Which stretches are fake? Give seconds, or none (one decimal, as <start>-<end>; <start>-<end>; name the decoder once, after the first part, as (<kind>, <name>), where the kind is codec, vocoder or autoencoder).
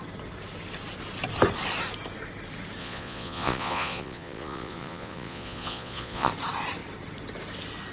2.8-6.3 (vocoder, Vocos)